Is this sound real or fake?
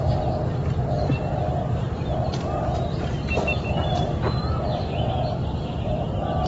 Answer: real